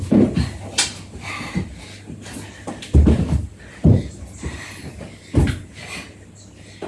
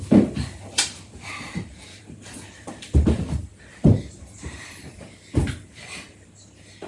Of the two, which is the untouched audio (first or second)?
first